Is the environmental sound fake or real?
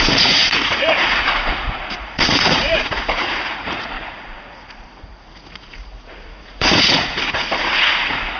fake